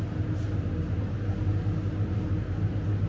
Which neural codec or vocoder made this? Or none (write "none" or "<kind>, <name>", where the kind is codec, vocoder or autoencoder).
none